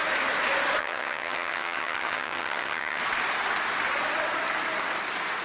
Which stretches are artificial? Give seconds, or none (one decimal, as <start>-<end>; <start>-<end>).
0.8-3.0